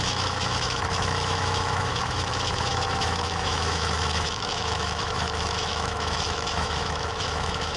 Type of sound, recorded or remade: remade